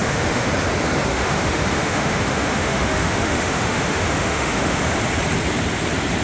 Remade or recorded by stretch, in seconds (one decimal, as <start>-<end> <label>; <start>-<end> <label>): 0.0-0.5 remade; 0.5-1.1 recorded; 1.1-4.8 remade; 4.8-6.2 recorded